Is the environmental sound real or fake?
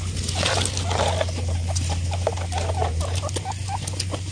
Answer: real